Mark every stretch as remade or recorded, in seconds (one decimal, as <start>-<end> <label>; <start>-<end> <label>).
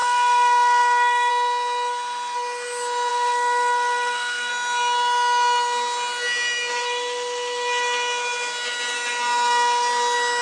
0.0-1.3 remade; 1.3-3.1 recorded; 3.1-4.5 remade; 4.5-10.4 recorded